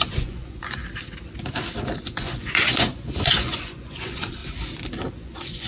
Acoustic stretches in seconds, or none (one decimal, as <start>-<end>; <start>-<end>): 0.8-2.0; 4.4-5.1